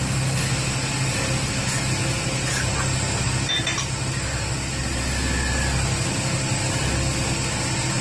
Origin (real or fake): real